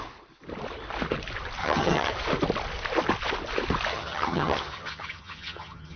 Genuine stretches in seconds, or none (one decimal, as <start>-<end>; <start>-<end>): 0.0-1.6; 2.1-3.9

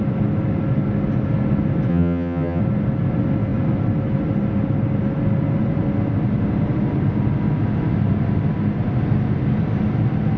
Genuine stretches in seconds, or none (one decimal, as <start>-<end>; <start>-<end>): 0.0-1.9; 2.6-10.4

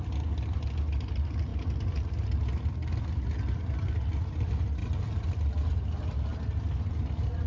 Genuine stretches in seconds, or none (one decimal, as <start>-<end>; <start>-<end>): 0.0-7.5